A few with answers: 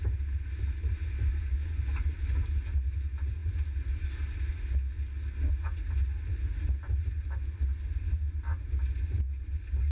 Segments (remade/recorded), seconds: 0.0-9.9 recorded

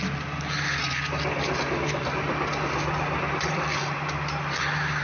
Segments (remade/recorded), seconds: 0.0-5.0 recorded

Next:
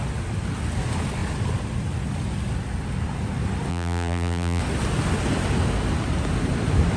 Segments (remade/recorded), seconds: 0.0-3.7 recorded; 3.7-4.6 remade; 4.6-7.0 recorded

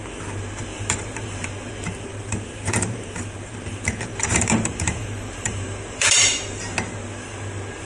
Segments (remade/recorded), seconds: 0.0-0.7 recorded; 0.7-1.7 remade; 1.7-2.1 recorded; 2.1-6.6 remade; 6.6-7.8 recorded